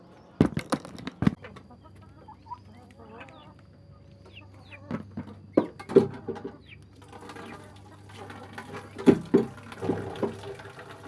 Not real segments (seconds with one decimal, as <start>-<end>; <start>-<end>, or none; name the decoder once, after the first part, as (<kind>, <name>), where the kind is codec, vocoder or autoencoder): none